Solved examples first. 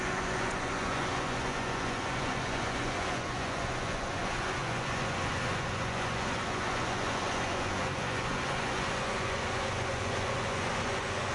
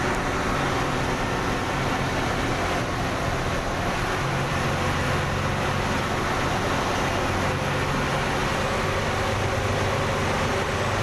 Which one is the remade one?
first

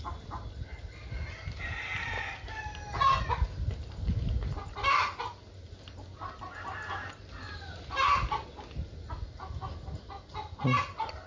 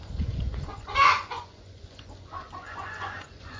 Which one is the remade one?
second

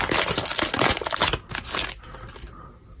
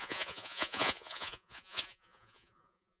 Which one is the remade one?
second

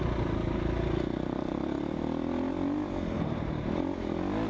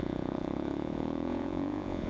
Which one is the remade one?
second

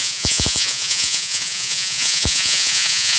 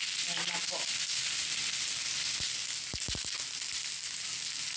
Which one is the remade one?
first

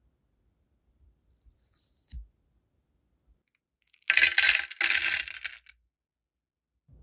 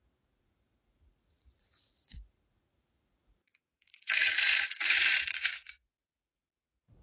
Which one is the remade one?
second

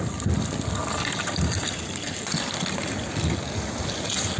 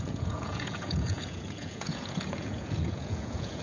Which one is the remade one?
second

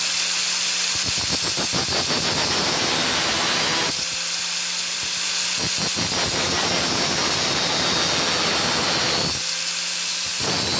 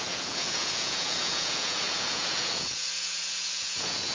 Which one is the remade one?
second